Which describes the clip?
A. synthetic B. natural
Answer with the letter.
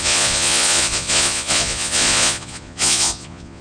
A